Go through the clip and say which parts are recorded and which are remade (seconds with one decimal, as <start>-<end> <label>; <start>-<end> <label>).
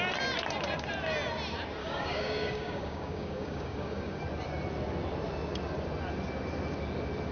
0.0-1.8 recorded; 1.8-4.2 remade; 4.2-7.3 recorded